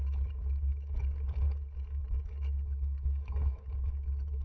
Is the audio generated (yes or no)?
yes